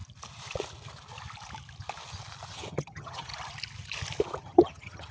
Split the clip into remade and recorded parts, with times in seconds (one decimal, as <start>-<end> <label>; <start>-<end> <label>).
0.0-2.5 recorded; 2.5-3.3 remade; 3.3-4.4 recorded; 4.4-5.1 remade